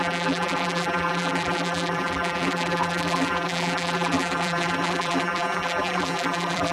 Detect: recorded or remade remade